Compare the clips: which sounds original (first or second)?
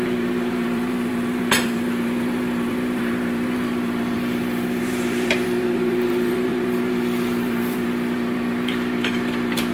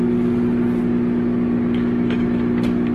second